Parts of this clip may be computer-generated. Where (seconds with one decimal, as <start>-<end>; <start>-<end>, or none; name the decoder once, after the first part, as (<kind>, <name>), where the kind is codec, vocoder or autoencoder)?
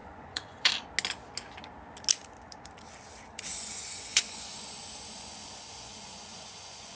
0.0-0.7 (vocoder, Vocos); 3.5-7.0